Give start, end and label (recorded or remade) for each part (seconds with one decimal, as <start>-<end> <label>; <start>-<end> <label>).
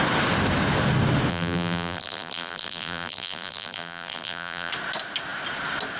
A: 0.0-1.3 recorded; 1.3-4.7 remade; 4.7-6.0 recorded